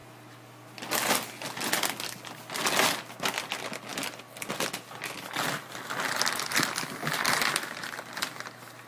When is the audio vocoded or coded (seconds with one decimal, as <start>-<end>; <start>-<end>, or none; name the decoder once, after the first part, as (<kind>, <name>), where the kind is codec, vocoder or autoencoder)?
none